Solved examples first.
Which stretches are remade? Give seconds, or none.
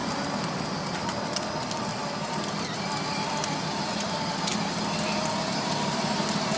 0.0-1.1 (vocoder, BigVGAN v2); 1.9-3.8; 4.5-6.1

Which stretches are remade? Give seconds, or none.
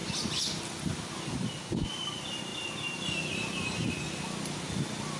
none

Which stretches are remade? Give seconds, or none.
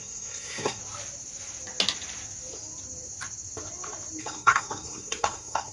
0.0-0.8 (codec, SNAC); 4.2-5.7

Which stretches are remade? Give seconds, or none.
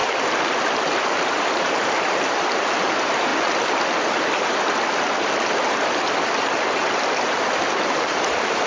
0.0-3.3 (vocoder, BigVGAN v2); 7.3-8.7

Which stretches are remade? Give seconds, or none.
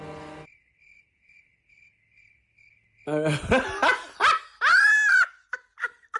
none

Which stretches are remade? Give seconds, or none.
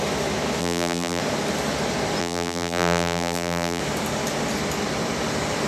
0.6-1.2 (vocoder, BigVGAN v2); 2.2-3.8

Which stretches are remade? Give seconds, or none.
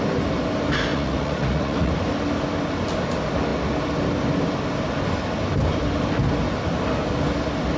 0.9-1.9 (vocoder, Vocos)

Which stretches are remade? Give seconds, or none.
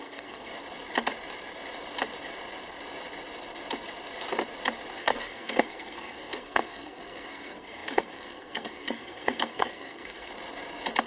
0.0-0.5 (codec, SNAC); 5.0-10.3